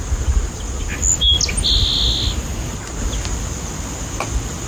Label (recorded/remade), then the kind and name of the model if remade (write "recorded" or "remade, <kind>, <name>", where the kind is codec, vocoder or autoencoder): recorded